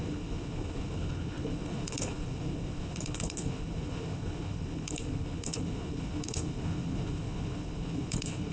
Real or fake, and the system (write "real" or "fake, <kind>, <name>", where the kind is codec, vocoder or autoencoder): fake, codec, HILCodec